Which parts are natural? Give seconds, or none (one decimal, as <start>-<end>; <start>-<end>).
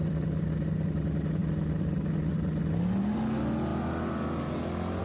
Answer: 0.0-5.0